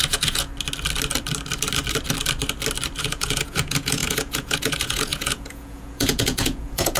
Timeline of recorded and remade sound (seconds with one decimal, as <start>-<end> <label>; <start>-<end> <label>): 0.0-0.5 remade; 0.5-3.0 recorded; 3.0-7.0 remade